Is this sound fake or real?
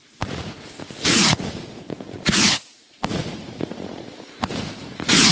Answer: fake